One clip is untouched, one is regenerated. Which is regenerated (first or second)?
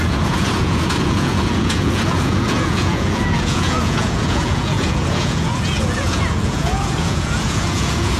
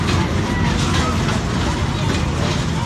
first